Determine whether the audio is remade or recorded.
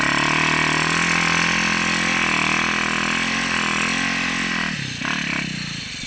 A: recorded